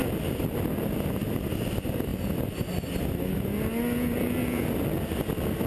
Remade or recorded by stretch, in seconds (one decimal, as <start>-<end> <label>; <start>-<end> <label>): 0.0-5.7 recorded